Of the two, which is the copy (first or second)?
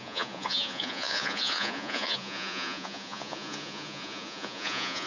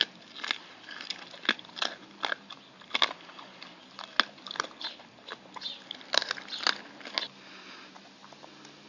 first